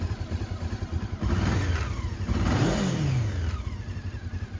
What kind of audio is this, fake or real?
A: real